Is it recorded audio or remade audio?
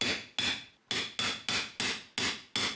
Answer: recorded